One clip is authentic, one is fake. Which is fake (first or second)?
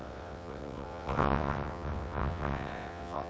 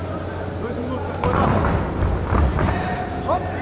first